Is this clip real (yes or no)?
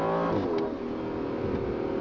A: yes